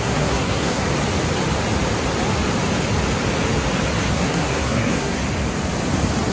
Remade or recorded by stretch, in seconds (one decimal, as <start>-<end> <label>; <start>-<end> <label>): 0.0-0.8 remade; 0.8-4.1 recorded; 4.1-5.2 remade; 5.2-6.3 recorded